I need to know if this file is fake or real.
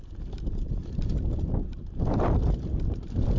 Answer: real